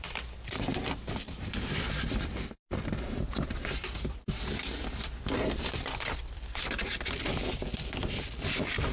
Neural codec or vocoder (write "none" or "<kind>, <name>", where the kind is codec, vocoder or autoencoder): vocoder, BigVGAN v2